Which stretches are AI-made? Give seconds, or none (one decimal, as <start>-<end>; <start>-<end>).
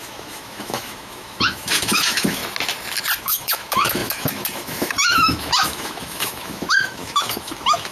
0.0-2.4; 3.2-7.9